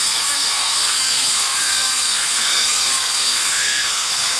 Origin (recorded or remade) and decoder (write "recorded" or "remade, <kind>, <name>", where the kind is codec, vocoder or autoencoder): remade, codec, SNAC